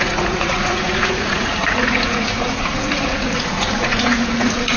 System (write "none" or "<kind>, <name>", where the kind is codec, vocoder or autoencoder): vocoder, Vocos